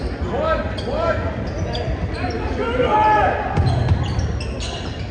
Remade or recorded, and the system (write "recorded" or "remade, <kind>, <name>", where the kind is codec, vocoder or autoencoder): remade, vocoder, BigVGAN v2